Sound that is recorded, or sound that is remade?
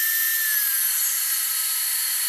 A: recorded